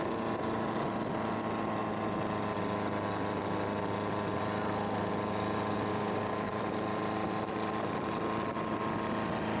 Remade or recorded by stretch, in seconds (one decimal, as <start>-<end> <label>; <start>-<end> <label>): 0.0-5.9 recorded; 5.9-6.6 remade; 6.6-9.6 recorded